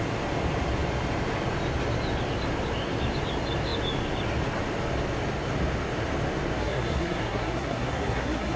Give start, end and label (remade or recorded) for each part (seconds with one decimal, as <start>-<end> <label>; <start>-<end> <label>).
0.0-6.6 recorded; 6.6-8.6 remade